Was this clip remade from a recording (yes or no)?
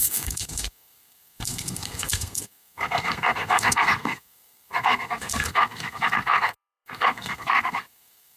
yes